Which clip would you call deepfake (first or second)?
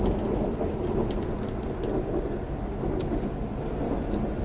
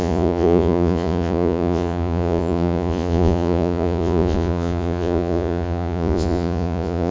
second